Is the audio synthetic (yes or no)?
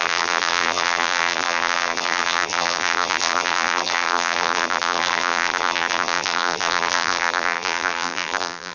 yes